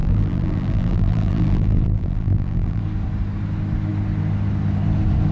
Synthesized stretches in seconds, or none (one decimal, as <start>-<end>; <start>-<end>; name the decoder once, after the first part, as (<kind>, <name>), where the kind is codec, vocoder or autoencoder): 0.0-2.8 (vocoder, BigVGAN v2)